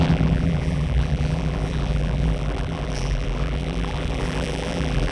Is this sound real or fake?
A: fake